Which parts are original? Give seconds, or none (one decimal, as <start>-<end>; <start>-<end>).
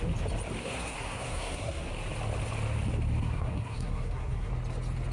0.0-0.6; 1.9-3.2; 4.5-5.1